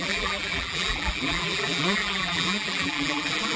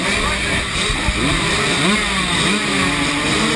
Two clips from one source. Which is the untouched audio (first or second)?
second